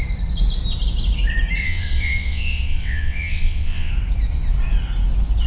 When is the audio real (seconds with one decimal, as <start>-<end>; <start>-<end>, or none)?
0.0-1.6; 3.9-5.5